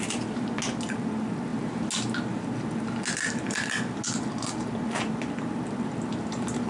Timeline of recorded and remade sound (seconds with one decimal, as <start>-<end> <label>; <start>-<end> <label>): 0.0-6.7 recorded